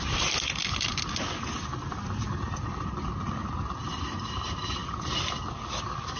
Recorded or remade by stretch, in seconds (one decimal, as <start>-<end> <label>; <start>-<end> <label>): 0.0-6.2 recorded